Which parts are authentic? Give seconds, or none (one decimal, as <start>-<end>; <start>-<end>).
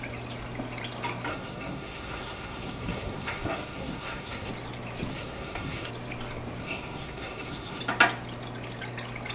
0.0-1.3; 4.5-5.1; 5.9-6.6; 7.8-9.3